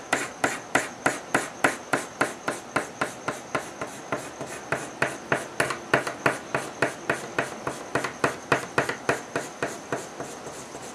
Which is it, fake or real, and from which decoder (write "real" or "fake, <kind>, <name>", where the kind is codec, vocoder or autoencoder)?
real